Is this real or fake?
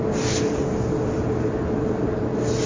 real